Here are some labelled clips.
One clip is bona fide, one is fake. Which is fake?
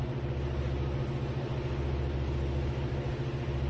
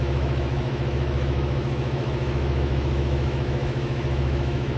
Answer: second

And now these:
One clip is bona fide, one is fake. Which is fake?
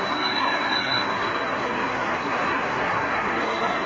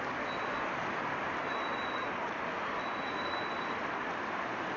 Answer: first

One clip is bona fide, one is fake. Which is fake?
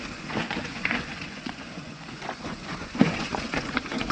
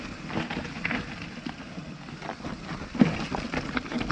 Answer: first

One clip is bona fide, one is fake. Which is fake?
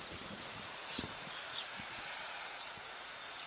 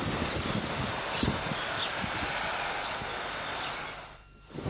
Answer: first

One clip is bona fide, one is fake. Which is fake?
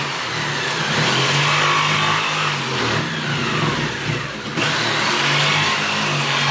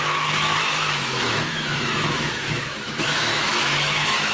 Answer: second